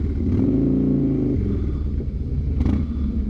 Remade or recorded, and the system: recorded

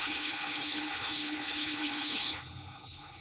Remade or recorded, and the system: remade, codec, HILCodec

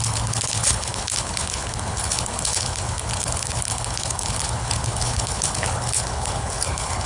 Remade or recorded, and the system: remade, codec, HILCodec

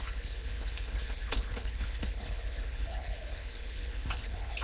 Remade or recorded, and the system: remade, codec, HILCodec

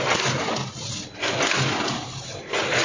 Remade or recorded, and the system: recorded